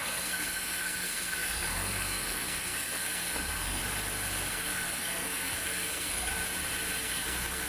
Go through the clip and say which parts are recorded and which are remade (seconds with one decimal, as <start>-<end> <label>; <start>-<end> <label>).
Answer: 0.0-3.8 remade; 3.8-4.5 recorded; 4.5-6.3 remade; 6.3-7.0 recorded; 7.0-7.7 remade